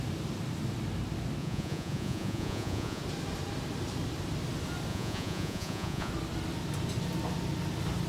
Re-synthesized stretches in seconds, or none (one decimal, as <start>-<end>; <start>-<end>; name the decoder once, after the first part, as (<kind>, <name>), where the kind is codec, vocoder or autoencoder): 1.4-3.0 (vocoder, Vocos); 4.9-6.1

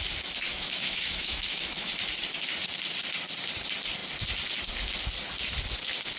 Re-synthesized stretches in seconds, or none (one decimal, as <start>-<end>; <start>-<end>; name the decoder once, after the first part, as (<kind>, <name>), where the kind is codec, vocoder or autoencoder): 0.5-1.9 (autoencoder, DAC-VAE)

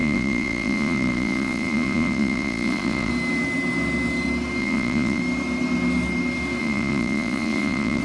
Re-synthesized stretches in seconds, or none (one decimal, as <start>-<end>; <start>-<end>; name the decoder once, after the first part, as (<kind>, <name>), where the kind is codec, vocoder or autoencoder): 0.0-3.1 (vocoder, Vocos); 4.6-5.2; 6.6-8.0

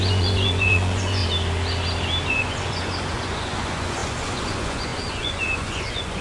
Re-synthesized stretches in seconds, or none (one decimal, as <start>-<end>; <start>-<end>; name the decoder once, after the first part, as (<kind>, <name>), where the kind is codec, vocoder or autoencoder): 0.0-1.2 (vocoder, Vocos); 2.3-6.2

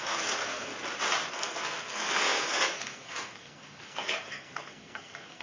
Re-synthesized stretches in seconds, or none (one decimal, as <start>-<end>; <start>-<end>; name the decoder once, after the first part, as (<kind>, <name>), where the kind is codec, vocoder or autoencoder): 0.0-0.7 (codec, SNAC); 1.3-5.4